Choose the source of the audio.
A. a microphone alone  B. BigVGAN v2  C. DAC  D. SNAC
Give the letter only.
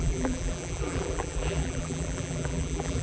B